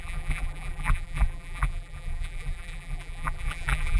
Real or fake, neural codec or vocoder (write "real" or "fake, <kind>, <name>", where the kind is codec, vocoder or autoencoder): fake, vocoder, BigVGAN v2